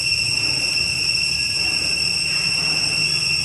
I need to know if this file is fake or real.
real